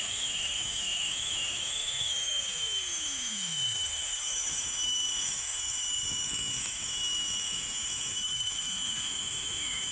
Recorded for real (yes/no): no